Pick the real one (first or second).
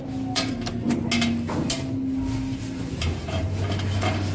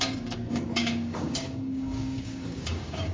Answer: first